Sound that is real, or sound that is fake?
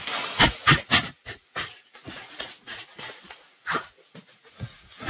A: fake